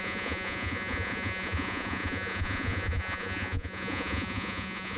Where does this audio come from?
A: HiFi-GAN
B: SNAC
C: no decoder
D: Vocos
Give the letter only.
D